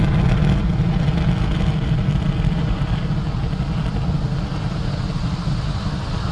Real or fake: real